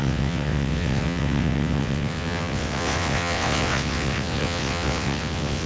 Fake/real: fake